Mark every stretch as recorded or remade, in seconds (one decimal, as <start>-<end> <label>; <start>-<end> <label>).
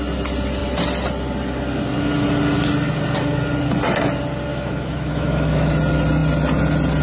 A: 0.0-4.5 recorded; 4.5-5.7 remade; 5.7-7.0 recorded